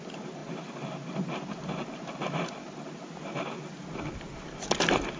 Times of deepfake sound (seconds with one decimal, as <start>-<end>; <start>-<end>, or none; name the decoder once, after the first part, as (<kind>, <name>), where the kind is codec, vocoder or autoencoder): none